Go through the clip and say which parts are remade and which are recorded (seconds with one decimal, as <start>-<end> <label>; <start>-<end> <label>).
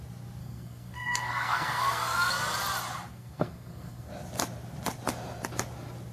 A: 0.0-0.4 recorded; 0.4-2.3 remade; 2.3-3.1 recorded; 3.1-4.1 remade; 4.1-6.1 recorded